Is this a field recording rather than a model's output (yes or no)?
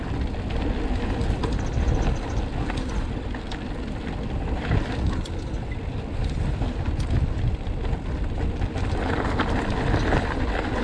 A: yes